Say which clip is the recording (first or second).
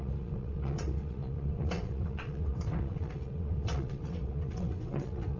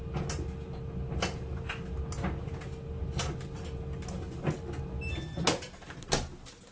second